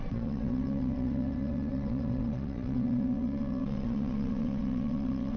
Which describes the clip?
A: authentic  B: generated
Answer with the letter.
B